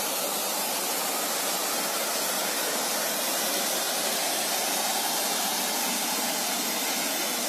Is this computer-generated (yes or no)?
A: no